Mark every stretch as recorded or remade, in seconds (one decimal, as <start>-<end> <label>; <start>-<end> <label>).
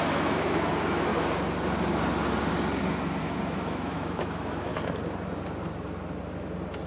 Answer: 0.0-1.1 remade; 1.1-3.2 recorded; 3.2-4.7 remade; 4.7-6.9 recorded